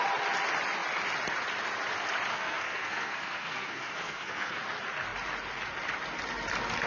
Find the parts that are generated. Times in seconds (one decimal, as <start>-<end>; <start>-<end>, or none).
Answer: 2.3-4.6